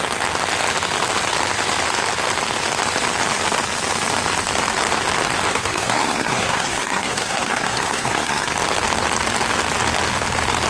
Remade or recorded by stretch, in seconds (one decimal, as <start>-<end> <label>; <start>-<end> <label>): 0.0-5.5 recorded; 5.5-8.5 remade; 8.5-10.7 recorded